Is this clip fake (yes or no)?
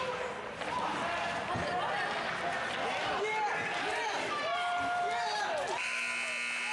no